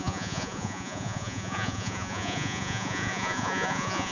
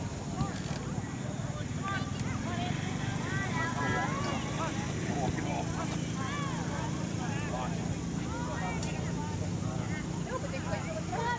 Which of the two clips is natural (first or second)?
second